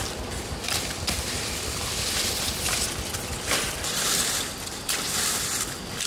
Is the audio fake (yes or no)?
yes